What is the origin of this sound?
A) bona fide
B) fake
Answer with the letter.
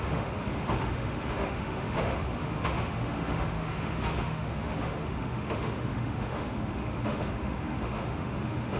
B